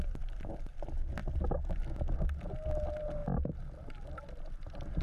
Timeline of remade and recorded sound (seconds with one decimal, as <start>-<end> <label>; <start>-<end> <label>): 0.0-5.0 recorded